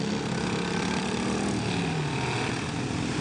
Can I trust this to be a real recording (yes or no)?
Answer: yes